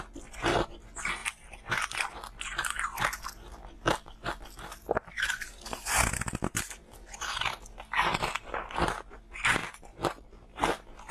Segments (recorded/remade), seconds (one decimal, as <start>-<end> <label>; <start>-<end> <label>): 0.0-11.1 recorded